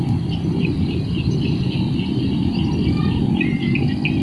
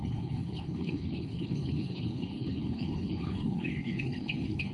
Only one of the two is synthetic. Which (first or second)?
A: second